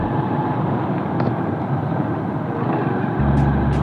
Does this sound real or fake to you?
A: real